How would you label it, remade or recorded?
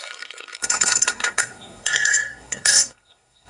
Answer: remade